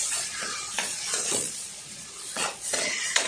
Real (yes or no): no